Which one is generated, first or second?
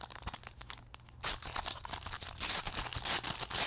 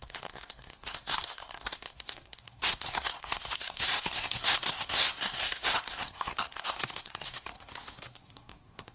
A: second